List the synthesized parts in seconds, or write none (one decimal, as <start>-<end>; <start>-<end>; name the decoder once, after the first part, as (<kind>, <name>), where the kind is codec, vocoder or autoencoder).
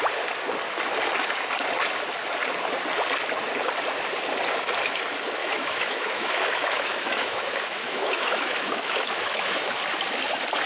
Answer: 5.4-9.8 (autoencoder, DAC-VAE)